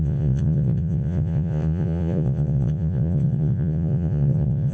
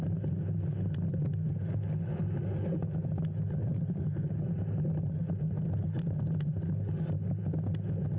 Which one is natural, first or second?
second